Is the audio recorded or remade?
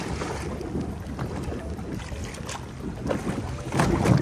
recorded